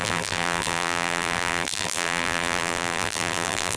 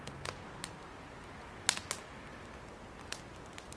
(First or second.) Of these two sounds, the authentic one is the second